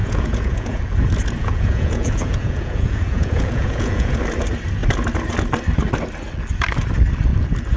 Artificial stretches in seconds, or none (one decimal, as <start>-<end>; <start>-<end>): 0.0-0.8; 1.4-4.2